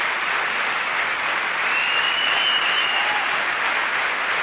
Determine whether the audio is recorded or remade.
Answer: recorded